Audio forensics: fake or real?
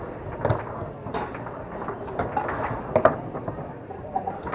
real